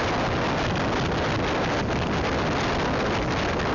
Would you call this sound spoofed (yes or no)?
no